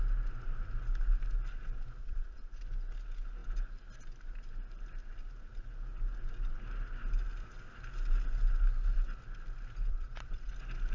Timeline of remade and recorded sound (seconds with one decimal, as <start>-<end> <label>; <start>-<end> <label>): 0.0-2.0 recorded; 2.0-2.6 remade; 2.6-9.9 recorded; 9.9-10.5 remade; 10.5-10.9 recorded